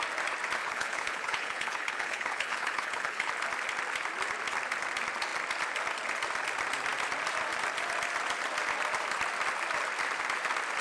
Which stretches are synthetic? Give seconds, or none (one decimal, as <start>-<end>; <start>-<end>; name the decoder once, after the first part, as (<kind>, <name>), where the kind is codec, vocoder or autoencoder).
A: 0.6-3.3 (codec, HILCodec)